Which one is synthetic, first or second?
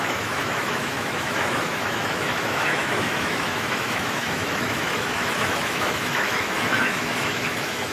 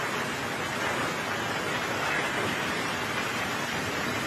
first